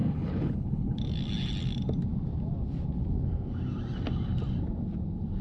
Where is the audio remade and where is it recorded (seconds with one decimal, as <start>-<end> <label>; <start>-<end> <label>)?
0.0-1.0 remade; 1.0-5.4 recorded